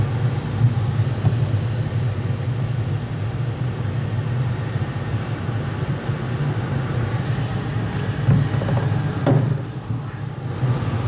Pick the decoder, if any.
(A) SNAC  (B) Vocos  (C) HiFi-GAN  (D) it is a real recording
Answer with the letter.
D